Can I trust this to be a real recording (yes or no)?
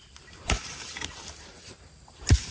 no